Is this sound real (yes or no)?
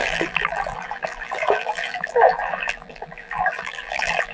no